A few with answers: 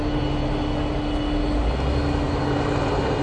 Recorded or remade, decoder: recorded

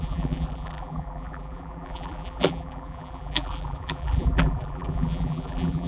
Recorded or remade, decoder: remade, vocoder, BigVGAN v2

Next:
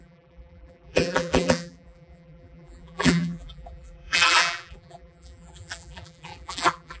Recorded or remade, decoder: remade, vocoder, BigVGAN v2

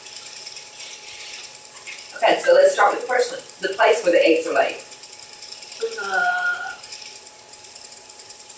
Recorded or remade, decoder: remade, vocoder, BigVGAN v2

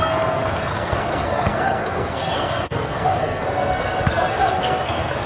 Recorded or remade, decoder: remade, codec, SNAC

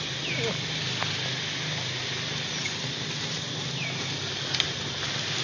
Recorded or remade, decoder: recorded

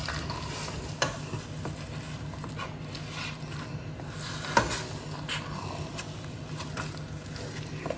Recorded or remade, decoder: recorded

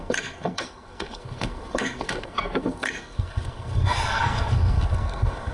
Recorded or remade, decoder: remade, codec, SNAC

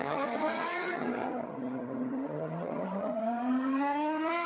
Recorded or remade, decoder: remade, vocoder, HiFi-GAN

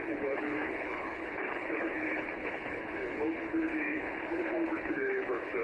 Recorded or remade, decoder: remade, codec, HILCodec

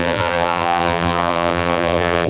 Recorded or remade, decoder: remade, vocoder, BigVGAN v2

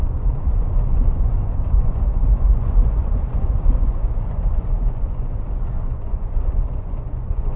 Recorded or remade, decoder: remade, vocoder, Vocos